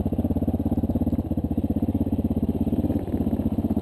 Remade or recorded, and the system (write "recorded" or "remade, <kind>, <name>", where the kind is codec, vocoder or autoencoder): recorded